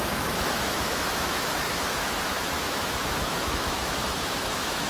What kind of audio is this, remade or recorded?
remade